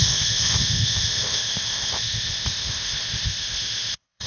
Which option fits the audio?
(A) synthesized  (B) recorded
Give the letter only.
A